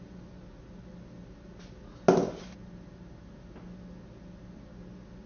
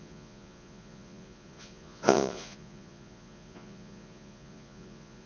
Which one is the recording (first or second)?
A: first